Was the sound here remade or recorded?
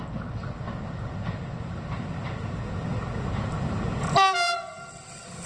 recorded